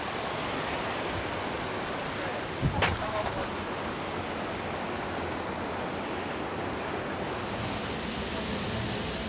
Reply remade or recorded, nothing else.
recorded